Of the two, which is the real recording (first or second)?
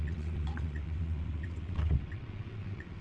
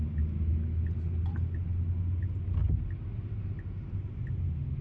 second